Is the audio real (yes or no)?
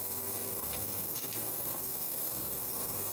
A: no